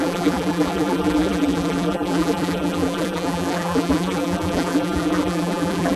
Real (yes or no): no